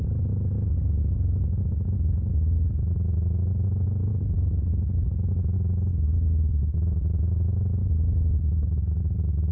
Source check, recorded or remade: recorded